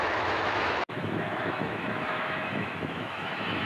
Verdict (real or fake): fake